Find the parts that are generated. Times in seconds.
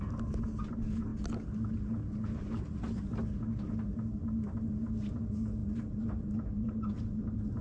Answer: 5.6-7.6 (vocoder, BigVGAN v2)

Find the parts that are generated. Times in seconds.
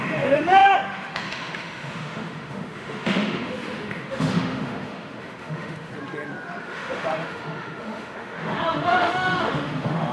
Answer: 0.0-5.9 (autoencoder, DAC-VAE); 6.6-10.1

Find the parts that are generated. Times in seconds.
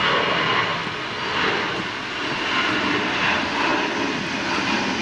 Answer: none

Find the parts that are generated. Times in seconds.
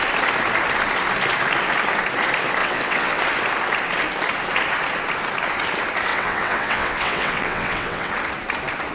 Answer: 2.6-3.2 (vocoder, WaveNeXt); 6.1-8.1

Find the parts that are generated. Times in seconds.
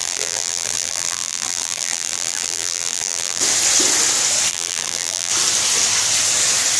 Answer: 0.0-3.4 (vocoder, BigVGAN v2); 4.5-5.3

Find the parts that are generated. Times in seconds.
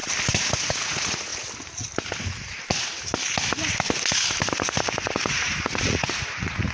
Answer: 0.7-1.3 (vocoder, Vocos); 5.3-6.7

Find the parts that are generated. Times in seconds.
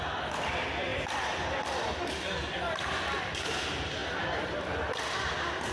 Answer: none